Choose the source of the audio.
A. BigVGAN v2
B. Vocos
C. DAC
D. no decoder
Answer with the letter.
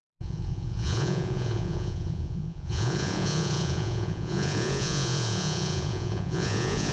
B